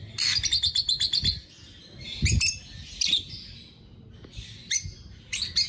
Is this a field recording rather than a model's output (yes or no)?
yes